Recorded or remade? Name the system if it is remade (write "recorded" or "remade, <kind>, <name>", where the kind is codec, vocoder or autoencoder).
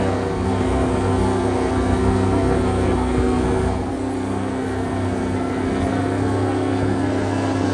remade, codec, SNAC